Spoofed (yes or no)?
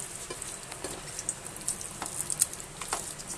no